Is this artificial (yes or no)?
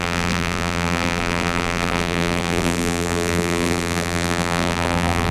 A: yes